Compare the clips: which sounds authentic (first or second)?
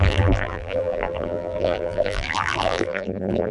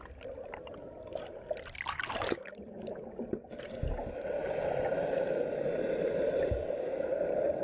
second